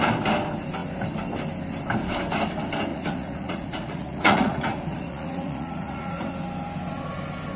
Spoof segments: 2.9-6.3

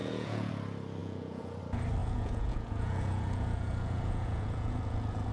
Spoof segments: 0.0-0.5; 1.0-1.6; 2.0-5.3

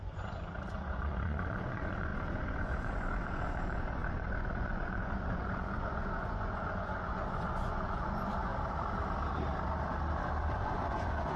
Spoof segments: 0.0-8.5; 10.5-11.4

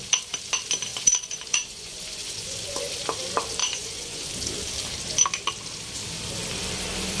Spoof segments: 0.9-2.9; 3.6-4.3

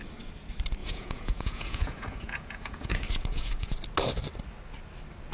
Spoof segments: 0.8-3.7